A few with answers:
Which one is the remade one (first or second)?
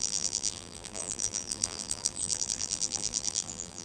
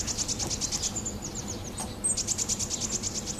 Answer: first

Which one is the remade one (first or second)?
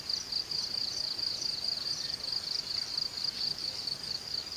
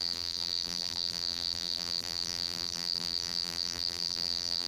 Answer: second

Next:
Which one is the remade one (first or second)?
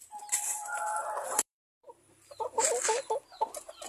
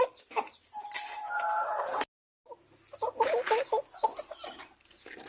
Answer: first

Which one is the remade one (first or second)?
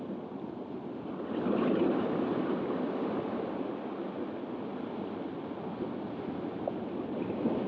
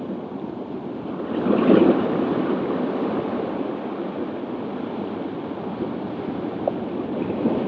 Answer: second